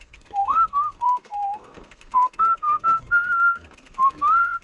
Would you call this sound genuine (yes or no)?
no